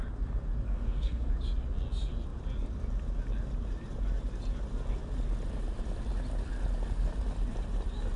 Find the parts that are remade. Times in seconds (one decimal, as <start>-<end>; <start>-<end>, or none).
0.7-1.3